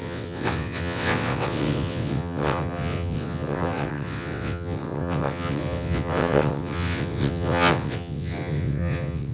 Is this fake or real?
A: fake